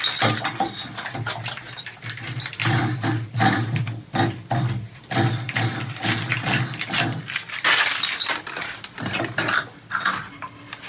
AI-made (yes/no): no